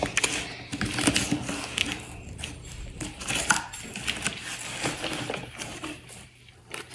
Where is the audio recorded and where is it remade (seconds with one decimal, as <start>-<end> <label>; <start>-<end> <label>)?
0.0-5.4 recorded; 5.4-6.9 remade

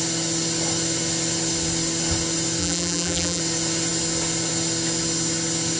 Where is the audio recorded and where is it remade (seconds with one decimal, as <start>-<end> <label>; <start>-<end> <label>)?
0.0-2.6 recorded; 2.6-3.4 remade; 3.4-5.8 recorded

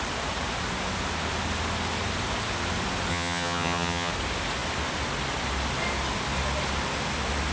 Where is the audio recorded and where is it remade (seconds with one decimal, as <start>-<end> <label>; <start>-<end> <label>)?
0.0-3.1 recorded; 3.1-4.1 remade; 4.1-7.5 recorded

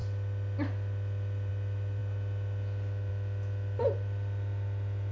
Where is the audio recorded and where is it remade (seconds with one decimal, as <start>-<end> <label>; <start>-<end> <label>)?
0.0-5.1 recorded

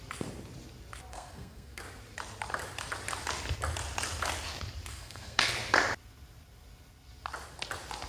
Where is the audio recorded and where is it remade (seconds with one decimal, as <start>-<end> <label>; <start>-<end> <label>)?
0.0-1.1 recorded; 1.1-1.8 remade; 1.8-4.9 recorded; 4.9-5.5 remade; 5.5-8.1 recorded